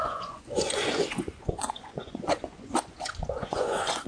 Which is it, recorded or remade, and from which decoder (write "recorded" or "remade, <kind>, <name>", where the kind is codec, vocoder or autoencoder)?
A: remade, vocoder, Vocos